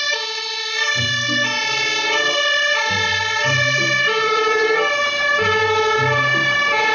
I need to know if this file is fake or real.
fake